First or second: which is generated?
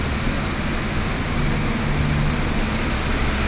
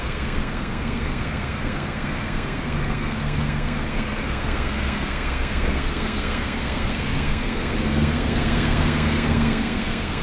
second